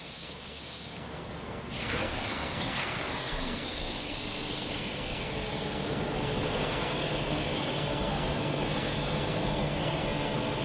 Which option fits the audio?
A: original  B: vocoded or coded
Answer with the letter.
B